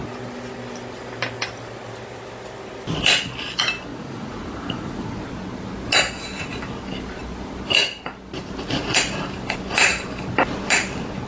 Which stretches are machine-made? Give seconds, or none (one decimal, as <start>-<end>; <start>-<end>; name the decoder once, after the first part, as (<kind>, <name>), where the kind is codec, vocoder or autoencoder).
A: 3.9-5.2 (vocoder, Vocos)